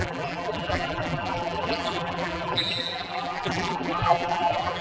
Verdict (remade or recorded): remade